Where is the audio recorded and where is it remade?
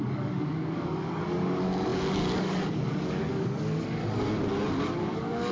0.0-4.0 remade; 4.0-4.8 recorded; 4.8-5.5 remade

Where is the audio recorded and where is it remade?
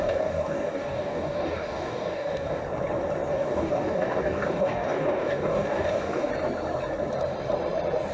0.0-2.6 remade; 2.6-3.3 recorded; 3.3-6.3 remade; 6.3-8.1 recorded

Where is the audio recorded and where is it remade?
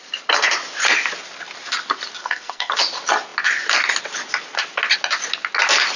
0.0-2.2 recorded; 2.2-2.7 remade; 2.7-6.0 recorded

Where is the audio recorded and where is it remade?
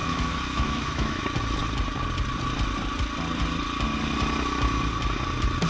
0.0-1.2 remade; 1.2-5.7 recorded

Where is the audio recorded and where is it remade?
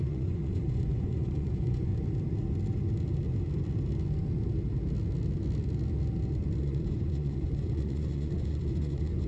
0.0-1.9 remade; 1.9-6.6 recorded; 6.6-9.3 remade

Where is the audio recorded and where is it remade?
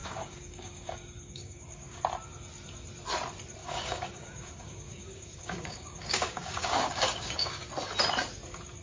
0.0-2.0 remade; 2.0-3.6 recorded; 3.6-7.7 remade; 7.7-8.8 recorded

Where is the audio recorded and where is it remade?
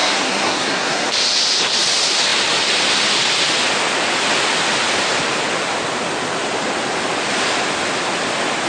0.0-1.1 remade; 1.1-8.7 recorded